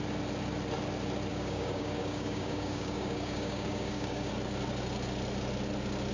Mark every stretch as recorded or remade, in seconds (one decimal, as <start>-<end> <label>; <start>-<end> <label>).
0.0-1.3 recorded; 1.3-4.3 remade; 4.3-6.1 recorded